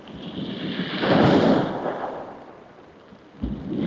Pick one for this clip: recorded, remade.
recorded